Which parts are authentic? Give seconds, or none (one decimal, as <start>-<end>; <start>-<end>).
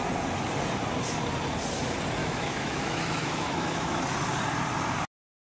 0.0-2.2; 4.0-5.4